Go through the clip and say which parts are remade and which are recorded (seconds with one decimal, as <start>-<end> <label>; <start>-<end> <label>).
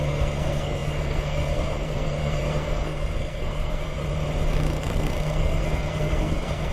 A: 0.0-4.0 remade; 4.0-4.5 recorded; 4.5-6.7 remade